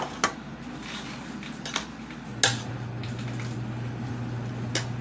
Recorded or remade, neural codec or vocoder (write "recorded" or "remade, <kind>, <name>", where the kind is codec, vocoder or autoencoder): recorded